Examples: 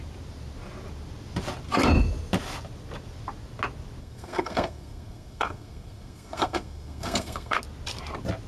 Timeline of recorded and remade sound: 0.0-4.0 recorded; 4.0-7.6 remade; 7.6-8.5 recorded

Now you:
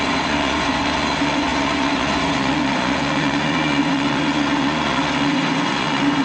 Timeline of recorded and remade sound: 0.0-6.2 remade

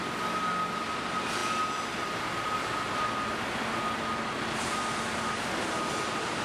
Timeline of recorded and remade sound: 0.0-6.4 recorded

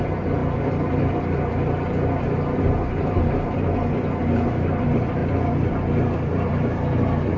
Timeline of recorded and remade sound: 0.0-7.4 remade

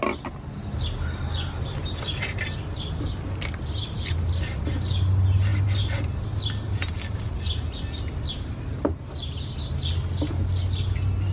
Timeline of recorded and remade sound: 0.0-11.3 recorded